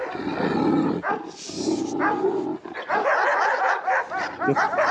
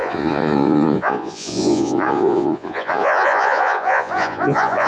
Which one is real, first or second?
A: first